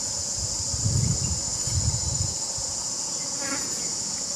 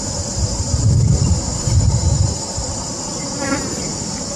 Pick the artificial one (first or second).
first